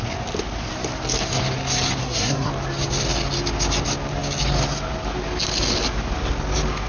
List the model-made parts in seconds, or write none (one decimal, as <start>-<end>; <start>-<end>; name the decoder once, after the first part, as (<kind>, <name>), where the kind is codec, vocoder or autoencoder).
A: 2.0-2.5 (codec, SNAC)